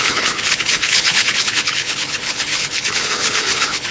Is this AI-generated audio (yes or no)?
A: yes